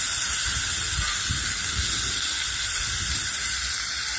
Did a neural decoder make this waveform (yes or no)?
no